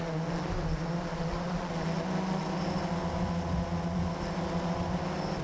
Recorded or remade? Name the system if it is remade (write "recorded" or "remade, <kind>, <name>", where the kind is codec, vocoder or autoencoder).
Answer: recorded